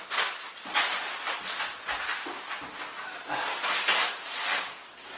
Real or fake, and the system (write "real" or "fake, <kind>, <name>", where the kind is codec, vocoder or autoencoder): real